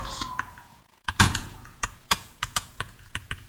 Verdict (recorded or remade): remade